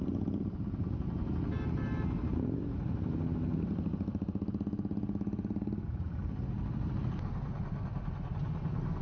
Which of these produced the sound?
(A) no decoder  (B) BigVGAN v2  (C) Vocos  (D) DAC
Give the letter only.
A